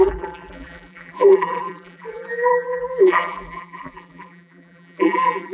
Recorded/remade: remade